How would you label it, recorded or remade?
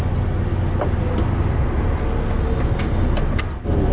recorded